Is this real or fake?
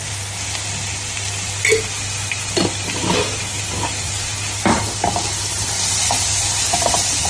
real